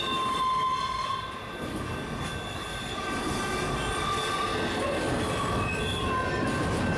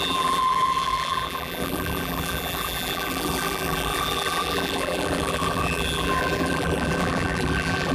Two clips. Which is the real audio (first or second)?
first